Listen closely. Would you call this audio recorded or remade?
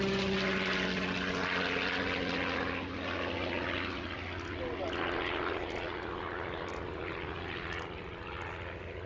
recorded